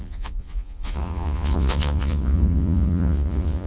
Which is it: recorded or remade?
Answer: remade